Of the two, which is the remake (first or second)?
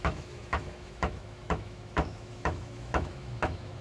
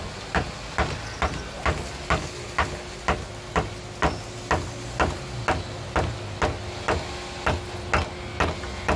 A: first